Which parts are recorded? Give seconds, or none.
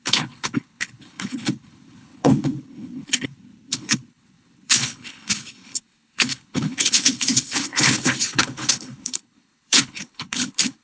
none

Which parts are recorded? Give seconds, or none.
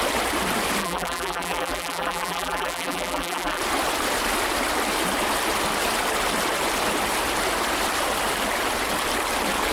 0.0-0.8; 3.6-9.7